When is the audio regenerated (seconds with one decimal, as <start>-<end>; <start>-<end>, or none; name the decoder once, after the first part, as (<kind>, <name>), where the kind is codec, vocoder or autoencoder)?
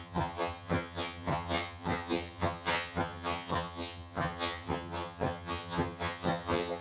0.0-6.8 (vocoder, HiFi-GAN)